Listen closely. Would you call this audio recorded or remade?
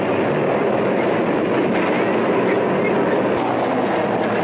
recorded